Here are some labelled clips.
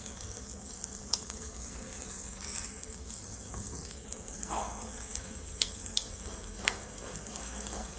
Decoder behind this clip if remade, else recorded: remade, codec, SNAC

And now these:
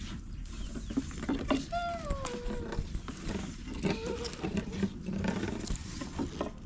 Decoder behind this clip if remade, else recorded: recorded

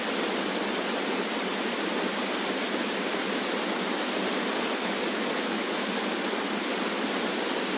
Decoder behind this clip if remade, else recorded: recorded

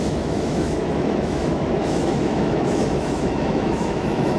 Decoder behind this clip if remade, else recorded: remade, autoencoder, DAC-VAE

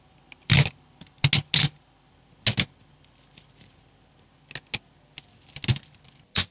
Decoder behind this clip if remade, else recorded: recorded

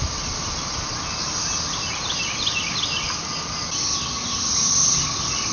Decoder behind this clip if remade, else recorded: recorded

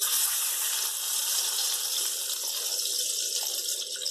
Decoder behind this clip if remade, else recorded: recorded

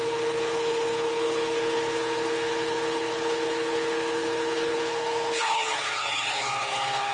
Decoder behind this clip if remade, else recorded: remade, codec, HILCodec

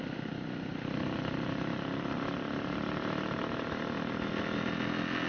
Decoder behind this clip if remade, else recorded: recorded